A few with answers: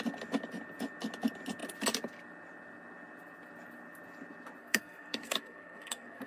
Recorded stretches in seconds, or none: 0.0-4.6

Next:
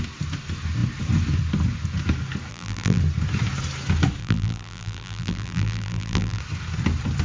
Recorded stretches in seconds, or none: 0.0-2.5; 3.0-4.2; 6.4-7.2

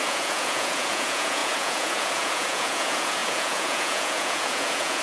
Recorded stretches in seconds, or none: none